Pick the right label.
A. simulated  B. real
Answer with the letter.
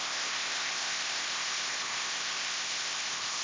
A